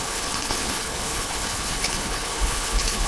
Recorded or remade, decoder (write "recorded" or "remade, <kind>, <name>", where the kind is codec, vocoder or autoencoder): remade, codec, HILCodec